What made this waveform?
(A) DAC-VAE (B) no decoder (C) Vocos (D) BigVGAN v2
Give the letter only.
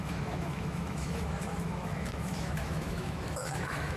A